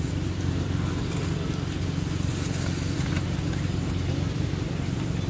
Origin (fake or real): real